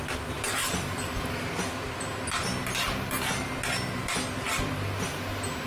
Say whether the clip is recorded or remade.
recorded